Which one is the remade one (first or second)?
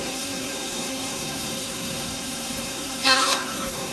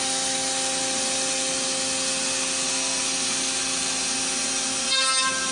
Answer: first